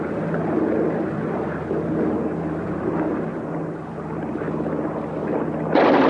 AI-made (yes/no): no